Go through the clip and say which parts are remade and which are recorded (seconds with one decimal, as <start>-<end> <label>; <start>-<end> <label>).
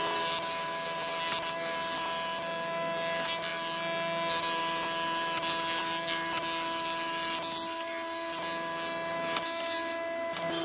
0.0-10.6 recorded